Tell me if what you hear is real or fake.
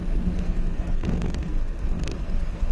fake